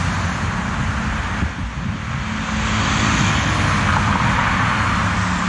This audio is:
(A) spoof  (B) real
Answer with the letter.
B